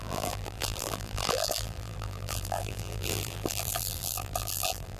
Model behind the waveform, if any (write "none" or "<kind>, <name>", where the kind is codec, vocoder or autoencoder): vocoder, BigVGAN v2